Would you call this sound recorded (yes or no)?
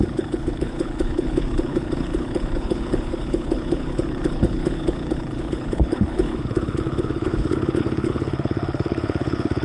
no